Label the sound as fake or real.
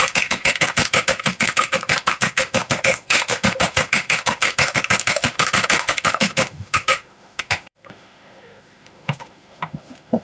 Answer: fake